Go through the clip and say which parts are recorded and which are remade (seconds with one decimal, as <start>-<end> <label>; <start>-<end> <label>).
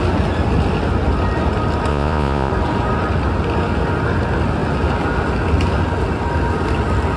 0.0-1.9 recorded; 1.9-2.5 remade; 2.5-7.2 recorded